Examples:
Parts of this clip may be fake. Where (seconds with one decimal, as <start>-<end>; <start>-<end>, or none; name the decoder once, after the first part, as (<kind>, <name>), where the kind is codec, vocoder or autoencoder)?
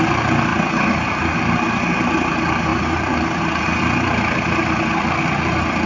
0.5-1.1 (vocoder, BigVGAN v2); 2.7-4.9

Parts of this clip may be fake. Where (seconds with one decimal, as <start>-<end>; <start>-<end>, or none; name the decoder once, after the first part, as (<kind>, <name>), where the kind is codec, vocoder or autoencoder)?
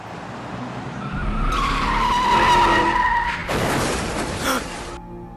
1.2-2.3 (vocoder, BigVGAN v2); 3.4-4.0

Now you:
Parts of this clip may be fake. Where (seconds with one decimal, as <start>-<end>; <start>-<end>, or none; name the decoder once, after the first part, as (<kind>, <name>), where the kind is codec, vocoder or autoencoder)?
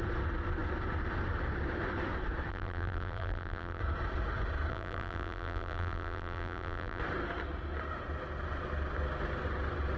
2.5-3.8 (vocoder, BigVGAN v2); 4.7-7.0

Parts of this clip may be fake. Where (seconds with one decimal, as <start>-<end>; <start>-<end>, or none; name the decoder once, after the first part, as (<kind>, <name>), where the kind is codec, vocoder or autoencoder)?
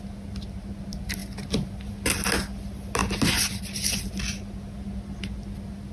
none